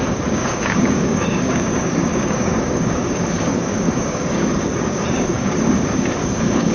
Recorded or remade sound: remade